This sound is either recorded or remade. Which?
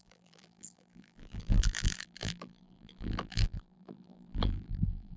remade